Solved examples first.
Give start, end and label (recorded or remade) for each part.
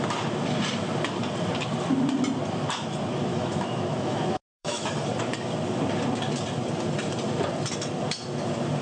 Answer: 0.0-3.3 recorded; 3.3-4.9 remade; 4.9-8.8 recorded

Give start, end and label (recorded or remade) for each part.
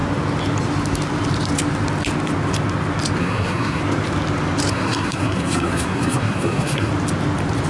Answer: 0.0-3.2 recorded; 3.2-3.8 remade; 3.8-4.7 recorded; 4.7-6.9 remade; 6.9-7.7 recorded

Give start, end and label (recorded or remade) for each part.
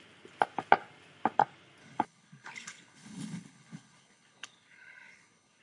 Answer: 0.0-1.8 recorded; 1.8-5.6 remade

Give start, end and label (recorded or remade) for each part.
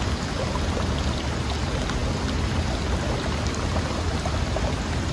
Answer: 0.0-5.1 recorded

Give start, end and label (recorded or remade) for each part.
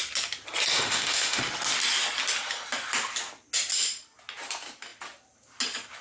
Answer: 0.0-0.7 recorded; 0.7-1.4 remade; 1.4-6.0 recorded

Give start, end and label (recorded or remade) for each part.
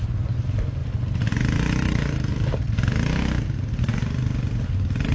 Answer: 0.0-5.1 recorded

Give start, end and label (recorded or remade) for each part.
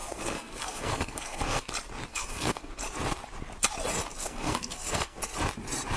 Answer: 0.0-1.7 remade; 1.7-2.1 recorded; 2.1-2.7 remade; 2.7-4.1 recorded; 4.1-5.2 remade; 5.2-6.0 recorded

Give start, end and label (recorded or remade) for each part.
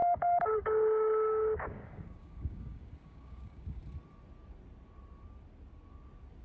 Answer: 0.0-3.8 remade; 3.8-6.4 recorded